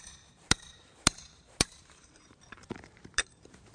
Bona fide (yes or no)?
no